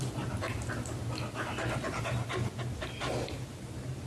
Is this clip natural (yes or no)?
yes